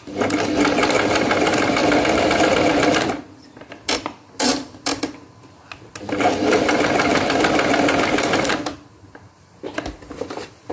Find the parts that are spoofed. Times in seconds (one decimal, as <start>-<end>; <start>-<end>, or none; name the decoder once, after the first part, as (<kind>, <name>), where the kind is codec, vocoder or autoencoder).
1.8-6.6 (vocoder, BigVGAN v2); 7.1-10.7